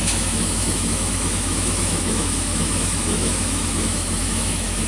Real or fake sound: fake